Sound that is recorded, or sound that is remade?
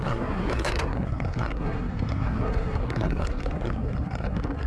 remade